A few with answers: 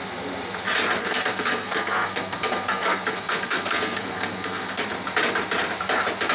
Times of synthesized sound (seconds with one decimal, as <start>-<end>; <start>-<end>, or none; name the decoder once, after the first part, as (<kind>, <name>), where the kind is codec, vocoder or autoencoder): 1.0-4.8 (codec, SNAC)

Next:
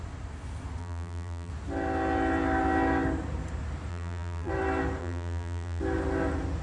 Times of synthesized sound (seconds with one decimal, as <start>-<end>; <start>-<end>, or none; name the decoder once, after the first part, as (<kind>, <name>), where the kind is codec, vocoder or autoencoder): 0.8-1.5 (vocoder, BigVGAN v2); 3.9-4.5; 5.0-5.8

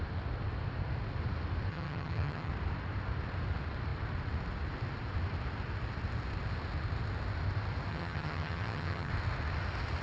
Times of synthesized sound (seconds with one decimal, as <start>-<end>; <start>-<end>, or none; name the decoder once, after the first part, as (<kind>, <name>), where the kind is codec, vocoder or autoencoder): 1.7-2.5 (vocoder, HiFi-GAN); 7.9-9.1